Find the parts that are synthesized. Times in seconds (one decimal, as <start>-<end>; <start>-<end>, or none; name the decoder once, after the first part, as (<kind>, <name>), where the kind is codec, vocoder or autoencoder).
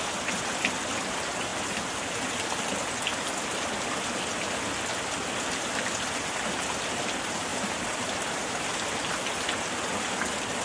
0.0-1.5 (vocoder, BigVGAN v2); 5.6-10.6